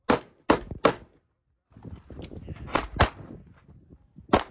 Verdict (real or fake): real